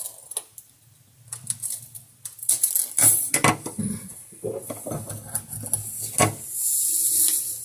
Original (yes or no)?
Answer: yes